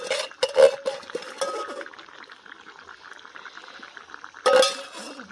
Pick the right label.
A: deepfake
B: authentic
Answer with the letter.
B